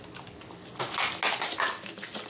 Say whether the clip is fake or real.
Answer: real